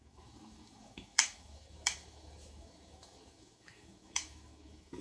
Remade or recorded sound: remade